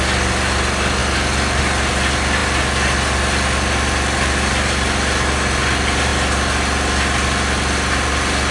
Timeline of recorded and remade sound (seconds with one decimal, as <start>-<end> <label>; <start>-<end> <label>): 0.0-8.5 recorded